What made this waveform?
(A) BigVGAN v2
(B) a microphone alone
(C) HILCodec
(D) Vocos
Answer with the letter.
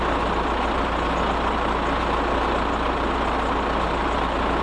B